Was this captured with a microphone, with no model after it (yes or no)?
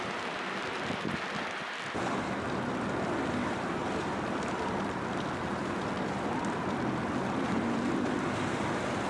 yes